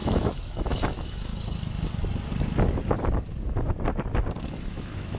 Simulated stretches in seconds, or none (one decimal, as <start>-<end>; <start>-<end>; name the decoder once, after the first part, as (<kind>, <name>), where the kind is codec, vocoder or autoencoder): 0.0-1.3 (autoencoder, DAC-VAE); 4.4-5.2